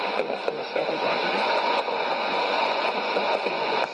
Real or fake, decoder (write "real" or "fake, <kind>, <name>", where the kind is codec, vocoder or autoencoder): fake, vocoder, Vocos